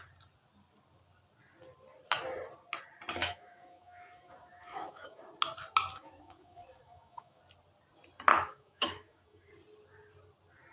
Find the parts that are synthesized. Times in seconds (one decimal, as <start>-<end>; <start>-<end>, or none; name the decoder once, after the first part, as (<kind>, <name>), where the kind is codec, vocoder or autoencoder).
3.2-5.2 (autoencoder, DAC-VAE); 5.9-7.4; 8.3-9.5